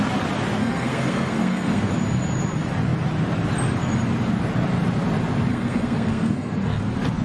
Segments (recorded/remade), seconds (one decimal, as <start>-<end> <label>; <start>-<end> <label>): 0.0-0.6 recorded; 0.6-1.8 remade; 1.8-5.5 recorded; 5.5-6.8 remade; 6.8-7.2 recorded